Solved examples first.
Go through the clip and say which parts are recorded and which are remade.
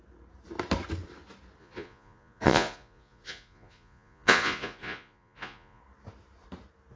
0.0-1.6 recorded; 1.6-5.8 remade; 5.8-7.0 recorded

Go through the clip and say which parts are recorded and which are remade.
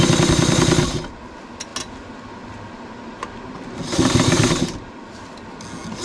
0.0-6.0 recorded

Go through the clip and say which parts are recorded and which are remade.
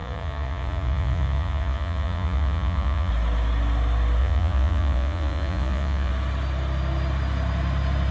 0.0-3.1 remade; 3.1-4.2 recorded; 4.2-6.1 remade; 6.1-8.1 recorded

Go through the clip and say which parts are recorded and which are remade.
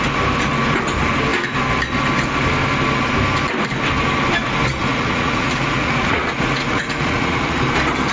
0.0-4.8 recorded; 4.8-7.6 remade; 7.6-8.1 recorded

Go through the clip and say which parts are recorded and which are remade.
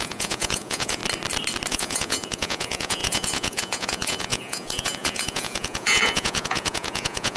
0.0-1.0 remade; 1.0-1.7 recorded; 1.7-7.4 remade